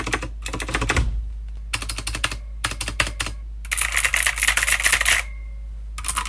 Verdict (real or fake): real